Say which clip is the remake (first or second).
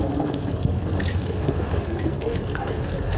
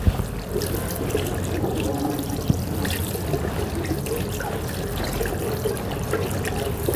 first